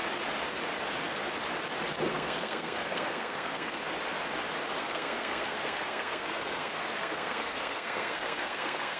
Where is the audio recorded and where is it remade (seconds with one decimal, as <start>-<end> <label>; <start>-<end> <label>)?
0.0-2.1 recorded; 2.1-3.8 remade; 3.8-4.8 recorded; 4.8-9.0 remade